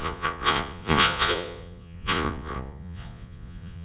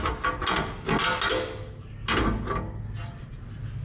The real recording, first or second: second